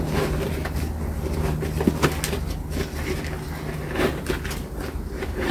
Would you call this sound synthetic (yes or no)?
no